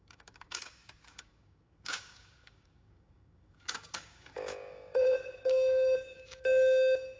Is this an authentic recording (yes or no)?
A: no